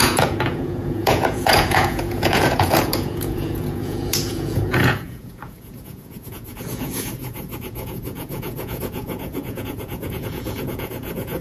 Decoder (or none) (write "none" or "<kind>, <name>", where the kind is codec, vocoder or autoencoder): vocoder, Vocos